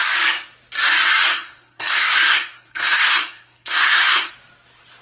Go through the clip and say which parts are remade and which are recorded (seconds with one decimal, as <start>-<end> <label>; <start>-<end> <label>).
0.0-1.3 recorded; 1.3-4.3 remade; 4.3-5.0 recorded